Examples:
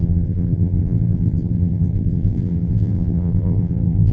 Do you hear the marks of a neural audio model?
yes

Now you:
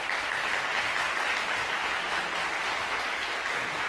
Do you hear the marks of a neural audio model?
no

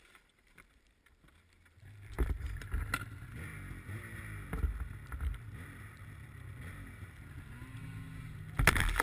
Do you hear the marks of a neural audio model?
no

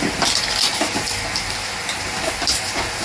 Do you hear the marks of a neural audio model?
no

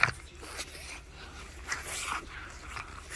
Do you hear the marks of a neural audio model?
no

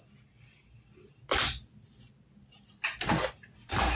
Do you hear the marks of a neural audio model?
no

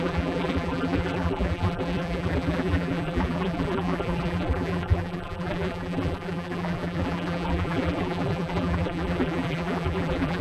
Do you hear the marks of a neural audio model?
yes